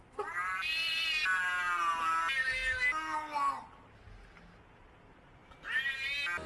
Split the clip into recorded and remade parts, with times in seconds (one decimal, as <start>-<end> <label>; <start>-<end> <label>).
0.0-6.5 recorded